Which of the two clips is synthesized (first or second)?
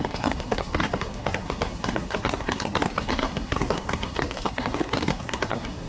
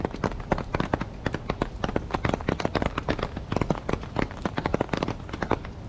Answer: first